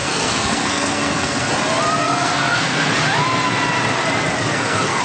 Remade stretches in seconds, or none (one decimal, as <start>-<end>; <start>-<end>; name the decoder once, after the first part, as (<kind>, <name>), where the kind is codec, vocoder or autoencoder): 0.0-1.5 (codec, SNAC); 2.0-2.9; 4.5-5.0